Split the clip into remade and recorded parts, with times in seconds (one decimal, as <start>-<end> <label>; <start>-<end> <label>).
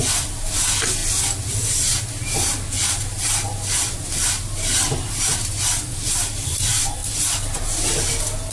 0.0-8.5 recorded